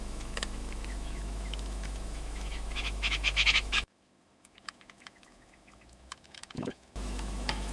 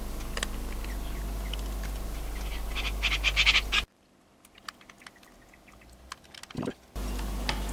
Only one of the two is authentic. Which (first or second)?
second